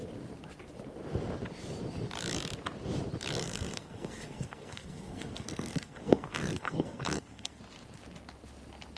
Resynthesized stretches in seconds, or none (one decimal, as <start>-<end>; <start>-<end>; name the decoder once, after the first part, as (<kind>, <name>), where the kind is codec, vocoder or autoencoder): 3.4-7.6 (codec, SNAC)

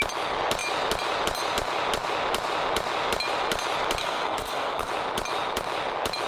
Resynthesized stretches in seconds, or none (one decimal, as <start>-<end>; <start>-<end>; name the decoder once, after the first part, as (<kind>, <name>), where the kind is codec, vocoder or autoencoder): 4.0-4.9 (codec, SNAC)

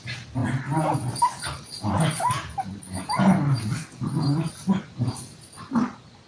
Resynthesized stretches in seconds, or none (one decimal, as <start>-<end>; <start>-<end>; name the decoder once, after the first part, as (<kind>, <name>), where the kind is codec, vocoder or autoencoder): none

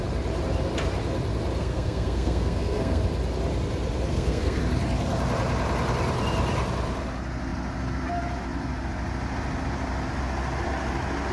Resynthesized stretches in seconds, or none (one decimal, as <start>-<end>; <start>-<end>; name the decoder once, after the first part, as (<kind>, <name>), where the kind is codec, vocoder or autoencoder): 1.6-3.0 (codec, SNAC); 4.1-4.6

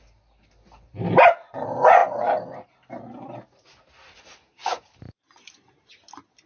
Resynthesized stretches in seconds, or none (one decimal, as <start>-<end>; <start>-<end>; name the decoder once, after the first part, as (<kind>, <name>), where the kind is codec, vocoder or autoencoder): none

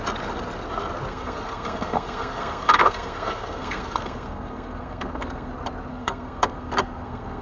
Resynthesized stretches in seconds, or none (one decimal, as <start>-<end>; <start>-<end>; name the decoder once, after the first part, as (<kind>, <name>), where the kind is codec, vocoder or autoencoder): 1.1-5.5 (codec, SNAC); 5.9-7.4

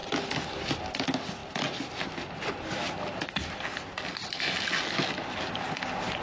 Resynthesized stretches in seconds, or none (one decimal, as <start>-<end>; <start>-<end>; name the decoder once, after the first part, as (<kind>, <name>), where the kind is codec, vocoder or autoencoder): none

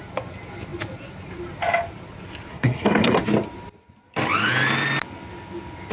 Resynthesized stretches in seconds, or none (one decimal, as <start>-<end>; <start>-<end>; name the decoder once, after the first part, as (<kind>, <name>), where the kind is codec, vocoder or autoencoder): 2.5-3.2 (codec, SNAC)